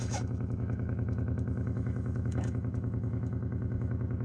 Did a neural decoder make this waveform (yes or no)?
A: yes